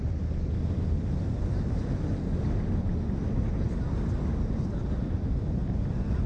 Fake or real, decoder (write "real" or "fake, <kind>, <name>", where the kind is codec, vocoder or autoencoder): real